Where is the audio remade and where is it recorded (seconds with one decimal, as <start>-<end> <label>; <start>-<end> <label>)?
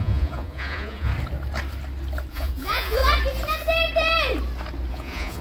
0.0-1.1 remade; 1.1-2.3 recorded; 2.3-3.0 remade; 3.0-4.9 recorded; 4.9-5.4 remade